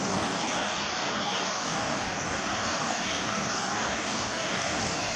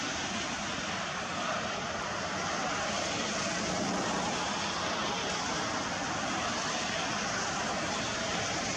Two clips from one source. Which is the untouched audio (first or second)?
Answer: second